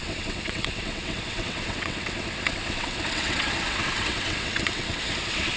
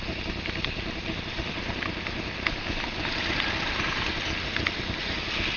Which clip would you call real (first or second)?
second